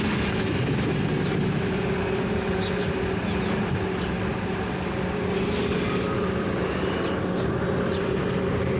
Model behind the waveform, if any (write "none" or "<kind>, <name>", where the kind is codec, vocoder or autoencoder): none